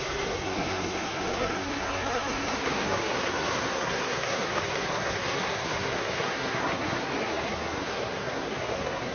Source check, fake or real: fake